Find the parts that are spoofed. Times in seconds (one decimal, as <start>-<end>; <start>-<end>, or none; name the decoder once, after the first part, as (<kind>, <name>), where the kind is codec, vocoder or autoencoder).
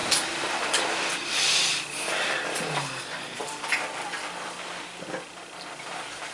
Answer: none